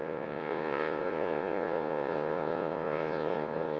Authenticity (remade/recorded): remade